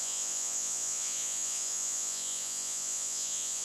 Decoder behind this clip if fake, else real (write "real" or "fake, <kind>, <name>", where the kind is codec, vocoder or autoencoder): fake, vocoder, Vocos